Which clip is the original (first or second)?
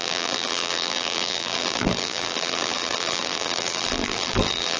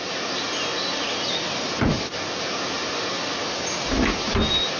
second